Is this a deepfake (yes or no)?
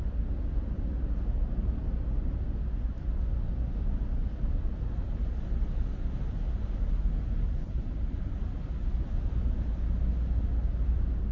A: no